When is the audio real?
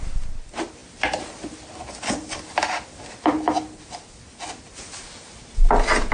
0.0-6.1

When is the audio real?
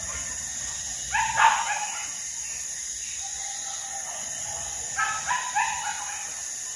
0.0-3.3; 4.9-6.8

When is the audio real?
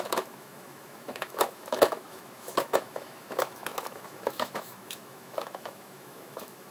none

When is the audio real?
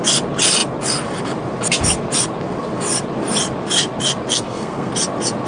0.0-4.3; 4.9-5.5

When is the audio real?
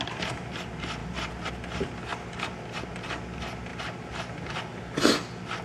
0.0-1.0; 1.5-3.7; 4.8-5.6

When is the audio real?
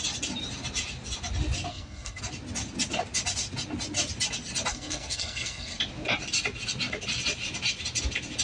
0.0-1.7; 2.2-4.7; 5.8-8.4